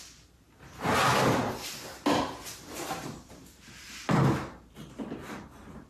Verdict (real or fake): real